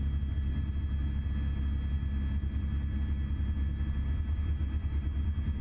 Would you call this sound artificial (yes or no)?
no